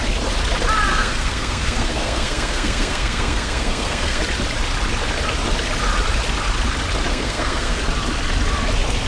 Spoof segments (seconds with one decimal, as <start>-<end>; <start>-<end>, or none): 0.9-4.2; 7.1-7.8